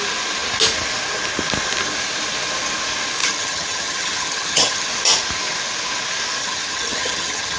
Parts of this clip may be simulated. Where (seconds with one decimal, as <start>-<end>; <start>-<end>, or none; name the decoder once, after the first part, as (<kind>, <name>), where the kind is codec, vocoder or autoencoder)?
3.2-4.9 (vocoder, HiFi-GAN); 6.4-7.6